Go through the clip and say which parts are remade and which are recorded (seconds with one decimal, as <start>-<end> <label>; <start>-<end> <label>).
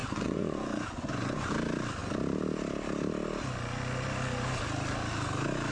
0.0-1.5 remade; 1.5-5.7 recorded